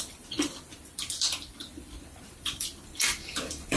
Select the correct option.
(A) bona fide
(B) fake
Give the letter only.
B